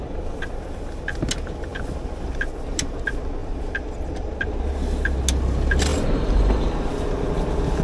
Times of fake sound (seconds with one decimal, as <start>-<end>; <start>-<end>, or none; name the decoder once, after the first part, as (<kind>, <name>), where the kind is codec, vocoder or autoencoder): 3.4-4.6 (vocoder, BigVGAN v2); 5.9-7.3